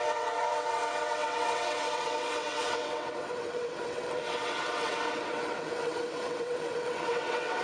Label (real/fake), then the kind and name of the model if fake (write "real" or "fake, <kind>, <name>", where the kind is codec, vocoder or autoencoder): fake, vocoder, WaveNeXt